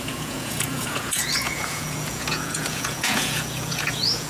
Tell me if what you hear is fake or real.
fake